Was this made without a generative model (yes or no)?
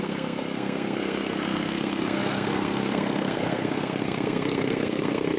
no